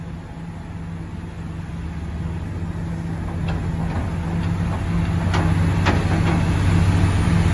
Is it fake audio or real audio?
real